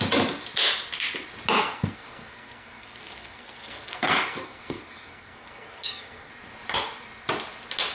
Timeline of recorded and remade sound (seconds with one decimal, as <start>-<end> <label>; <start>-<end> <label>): 0.0-1.6 recorded; 1.6-6.3 remade; 6.3-7.9 recorded